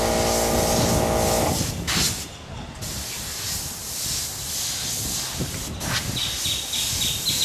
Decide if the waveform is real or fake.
real